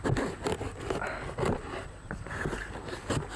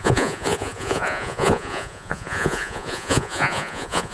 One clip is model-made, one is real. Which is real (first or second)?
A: first